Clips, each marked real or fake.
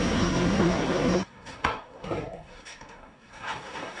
fake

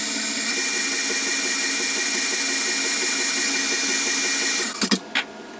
real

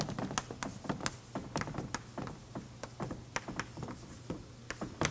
real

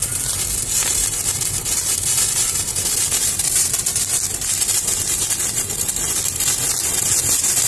real